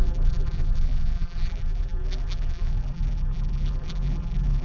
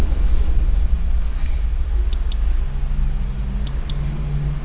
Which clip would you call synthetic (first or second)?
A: first